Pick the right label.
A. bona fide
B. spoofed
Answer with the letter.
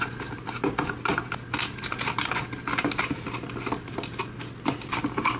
A